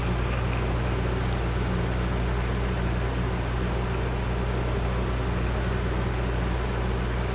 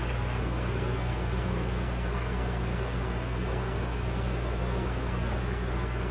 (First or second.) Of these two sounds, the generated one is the second